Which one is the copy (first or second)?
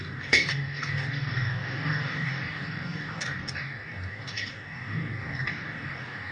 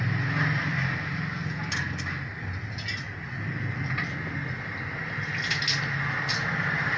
first